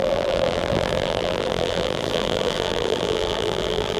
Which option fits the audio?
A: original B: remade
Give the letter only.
B